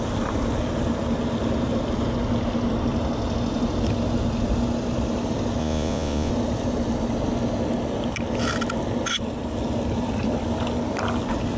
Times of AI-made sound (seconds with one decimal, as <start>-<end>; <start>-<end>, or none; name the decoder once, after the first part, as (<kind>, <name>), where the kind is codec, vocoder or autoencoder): 5.6-6.3 (vocoder, Vocos)